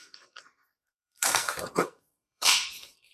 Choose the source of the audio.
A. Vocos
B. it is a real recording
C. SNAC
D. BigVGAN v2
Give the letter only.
C